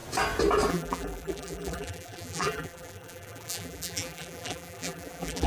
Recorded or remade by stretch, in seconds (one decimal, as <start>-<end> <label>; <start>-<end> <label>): 0.0-0.7 recorded; 0.7-5.5 remade